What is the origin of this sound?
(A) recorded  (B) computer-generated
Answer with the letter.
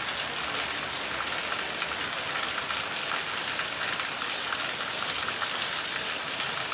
A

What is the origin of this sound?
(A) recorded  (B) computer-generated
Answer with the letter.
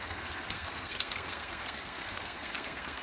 B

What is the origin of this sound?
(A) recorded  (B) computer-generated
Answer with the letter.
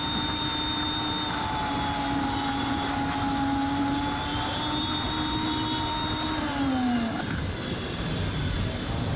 A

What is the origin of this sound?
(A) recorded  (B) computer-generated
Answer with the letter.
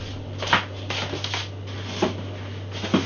A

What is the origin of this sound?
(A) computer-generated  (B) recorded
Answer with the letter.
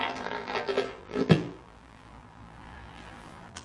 A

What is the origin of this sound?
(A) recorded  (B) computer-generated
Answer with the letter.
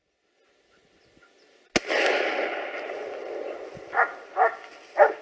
A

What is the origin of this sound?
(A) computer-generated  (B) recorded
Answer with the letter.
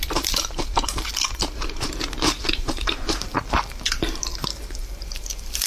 A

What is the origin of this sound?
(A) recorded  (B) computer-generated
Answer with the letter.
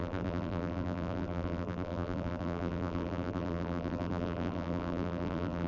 B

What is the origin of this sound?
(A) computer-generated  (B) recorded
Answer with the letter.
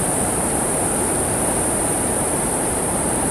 A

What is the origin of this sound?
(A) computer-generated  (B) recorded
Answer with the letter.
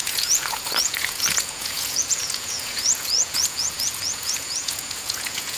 A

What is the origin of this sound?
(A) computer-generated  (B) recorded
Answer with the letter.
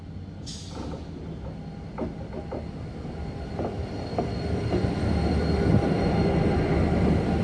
B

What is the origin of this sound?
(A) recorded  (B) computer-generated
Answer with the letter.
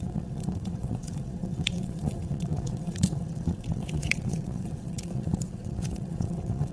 B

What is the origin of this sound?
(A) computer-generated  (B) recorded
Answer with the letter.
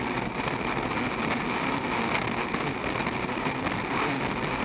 B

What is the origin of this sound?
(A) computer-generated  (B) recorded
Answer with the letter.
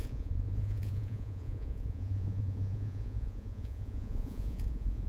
A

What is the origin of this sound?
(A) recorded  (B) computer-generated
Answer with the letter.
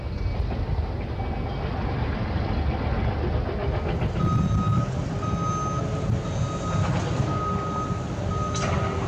A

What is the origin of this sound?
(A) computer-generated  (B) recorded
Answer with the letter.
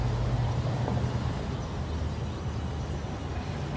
B